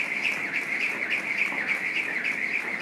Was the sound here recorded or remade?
recorded